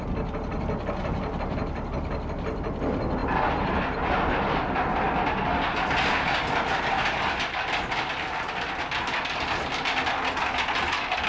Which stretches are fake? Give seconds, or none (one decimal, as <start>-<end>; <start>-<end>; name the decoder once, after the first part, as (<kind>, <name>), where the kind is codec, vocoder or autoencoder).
none